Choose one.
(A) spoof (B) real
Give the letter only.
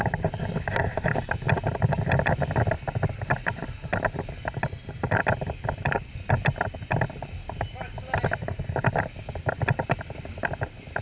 B